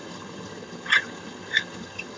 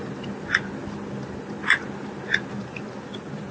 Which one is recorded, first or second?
second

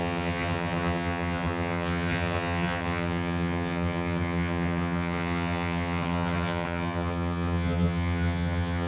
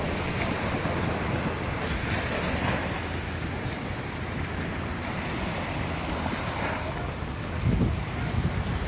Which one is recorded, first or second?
second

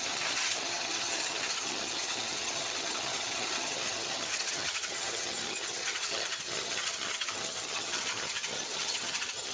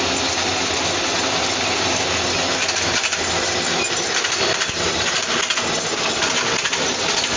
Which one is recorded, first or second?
second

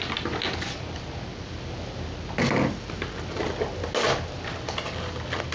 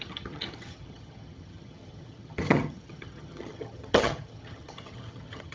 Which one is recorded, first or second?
first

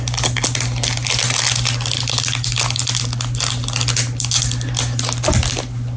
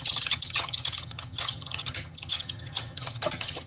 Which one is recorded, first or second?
first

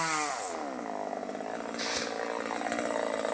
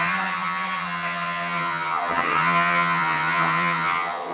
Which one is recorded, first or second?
first